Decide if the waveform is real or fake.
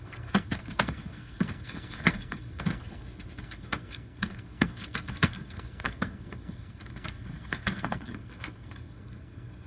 fake